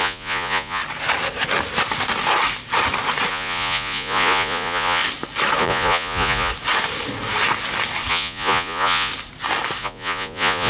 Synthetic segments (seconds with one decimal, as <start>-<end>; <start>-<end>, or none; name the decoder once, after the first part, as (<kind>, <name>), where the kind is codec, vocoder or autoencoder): 0.0-0.8 (vocoder, Vocos); 3.3-5.0; 5.6-6.5; 8.1-9.1; 9.8-10.7